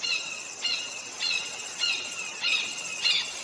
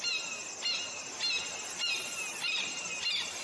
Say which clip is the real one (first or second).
second